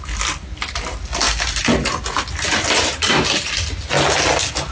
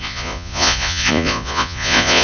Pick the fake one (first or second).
second